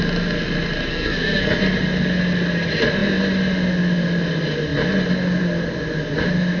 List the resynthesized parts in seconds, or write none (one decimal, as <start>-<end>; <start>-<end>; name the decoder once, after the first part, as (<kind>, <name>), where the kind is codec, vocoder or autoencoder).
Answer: 0.9-1.6 (codec, SNAC)